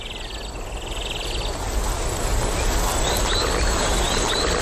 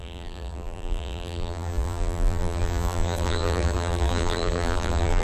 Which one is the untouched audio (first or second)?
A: first